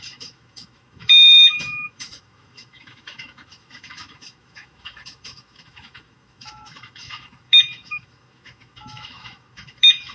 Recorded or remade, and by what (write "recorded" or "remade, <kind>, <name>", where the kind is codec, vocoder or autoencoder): remade, autoencoder, DAC-VAE